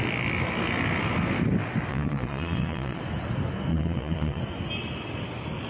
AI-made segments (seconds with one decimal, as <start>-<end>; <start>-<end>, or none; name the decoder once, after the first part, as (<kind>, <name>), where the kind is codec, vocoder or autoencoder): 1.9-3.0 (vocoder, Vocos); 3.7-4.4